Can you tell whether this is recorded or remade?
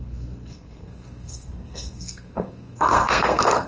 remade